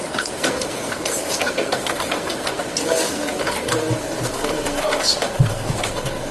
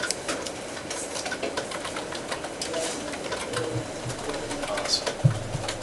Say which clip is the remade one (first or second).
first